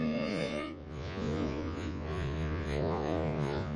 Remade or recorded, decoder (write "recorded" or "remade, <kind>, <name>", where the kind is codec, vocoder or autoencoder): remade, vocoder, Vocos